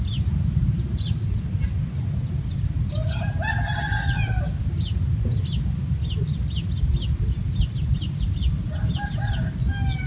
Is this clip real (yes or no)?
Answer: yes